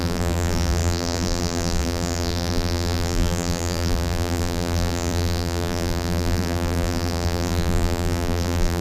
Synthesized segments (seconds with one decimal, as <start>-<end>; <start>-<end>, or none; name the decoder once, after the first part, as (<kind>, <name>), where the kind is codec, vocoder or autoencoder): 0.0-8.8 (vocoder, BigVGAN v2)